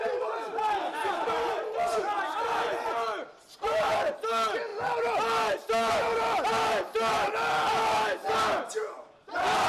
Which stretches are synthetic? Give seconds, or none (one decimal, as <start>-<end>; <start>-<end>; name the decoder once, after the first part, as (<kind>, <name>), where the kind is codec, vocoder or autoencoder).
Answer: none